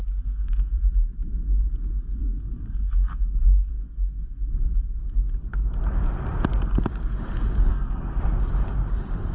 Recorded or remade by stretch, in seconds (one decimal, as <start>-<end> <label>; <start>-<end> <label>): 0.0-0.7 remade; 0.7-2.2 recorded; 2.2-3.7 remade; 3.7-7.7 recorded; 7.7-8.2 remade; 8.2-9.3 recorded